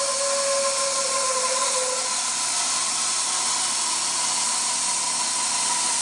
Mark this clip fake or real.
real